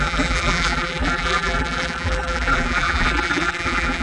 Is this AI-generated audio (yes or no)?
yes